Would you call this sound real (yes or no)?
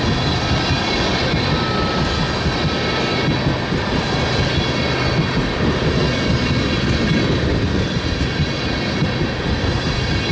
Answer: yes